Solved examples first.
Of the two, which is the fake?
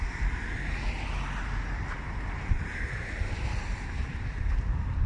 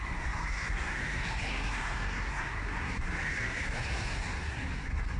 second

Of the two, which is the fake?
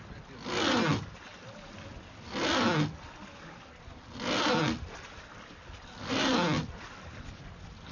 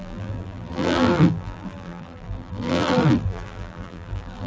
second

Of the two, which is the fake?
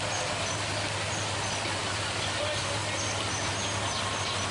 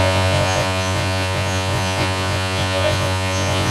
second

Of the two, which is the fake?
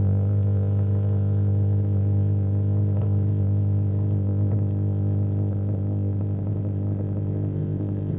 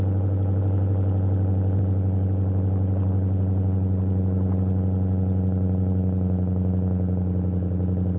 first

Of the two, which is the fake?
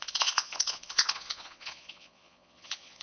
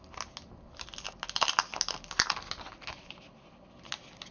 first